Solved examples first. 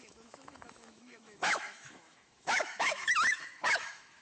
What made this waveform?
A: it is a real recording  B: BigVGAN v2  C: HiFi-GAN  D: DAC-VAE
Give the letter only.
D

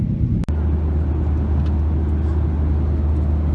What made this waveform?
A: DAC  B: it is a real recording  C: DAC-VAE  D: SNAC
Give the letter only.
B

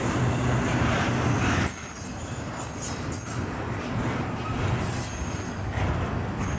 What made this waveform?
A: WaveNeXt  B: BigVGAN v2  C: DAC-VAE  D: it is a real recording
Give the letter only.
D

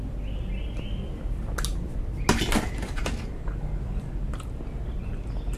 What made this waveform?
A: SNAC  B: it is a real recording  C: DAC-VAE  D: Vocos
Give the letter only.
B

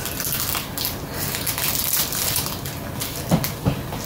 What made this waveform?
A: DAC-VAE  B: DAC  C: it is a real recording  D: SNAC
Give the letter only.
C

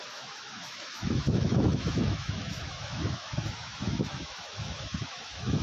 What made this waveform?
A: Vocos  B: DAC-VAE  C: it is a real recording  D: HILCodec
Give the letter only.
B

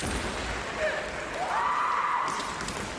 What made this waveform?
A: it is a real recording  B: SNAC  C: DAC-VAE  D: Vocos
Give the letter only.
A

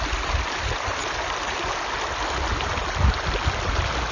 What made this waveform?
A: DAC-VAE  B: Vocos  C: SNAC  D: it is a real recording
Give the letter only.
D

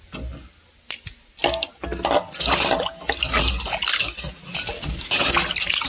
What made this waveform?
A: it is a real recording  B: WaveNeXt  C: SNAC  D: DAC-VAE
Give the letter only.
A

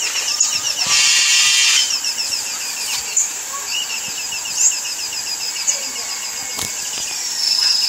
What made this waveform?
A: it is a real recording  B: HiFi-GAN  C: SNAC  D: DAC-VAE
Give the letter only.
A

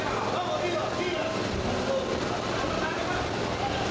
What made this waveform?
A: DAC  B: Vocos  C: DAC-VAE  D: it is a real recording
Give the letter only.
D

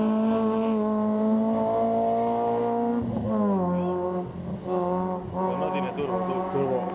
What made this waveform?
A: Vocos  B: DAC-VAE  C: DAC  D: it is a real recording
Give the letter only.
D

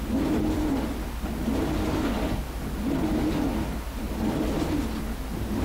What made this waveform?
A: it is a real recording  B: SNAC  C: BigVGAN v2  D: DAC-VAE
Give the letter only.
A